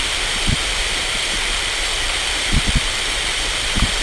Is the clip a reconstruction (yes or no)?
yes